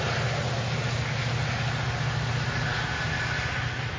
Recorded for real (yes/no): yes